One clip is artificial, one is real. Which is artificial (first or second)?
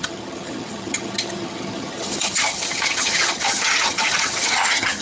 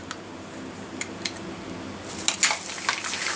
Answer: first